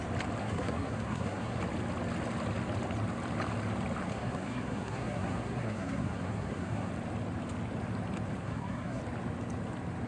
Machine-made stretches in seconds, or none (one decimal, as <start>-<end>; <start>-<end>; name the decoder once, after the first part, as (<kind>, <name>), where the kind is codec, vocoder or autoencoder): 0.4-1.6 (codec, SNAC); 4.1-6.9; 8.4-9.0